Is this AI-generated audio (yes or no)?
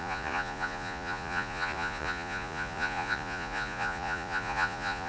yes